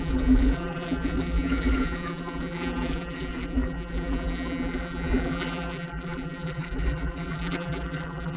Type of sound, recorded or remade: remade